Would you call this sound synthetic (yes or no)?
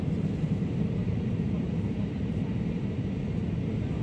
yes